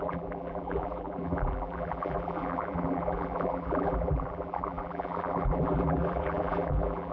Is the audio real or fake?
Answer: fake